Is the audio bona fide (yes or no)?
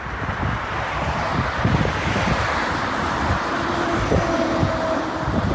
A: yes